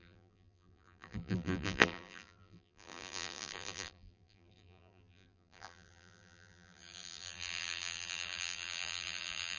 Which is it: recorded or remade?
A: remade